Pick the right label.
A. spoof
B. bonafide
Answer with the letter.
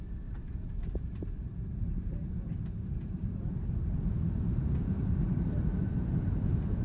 A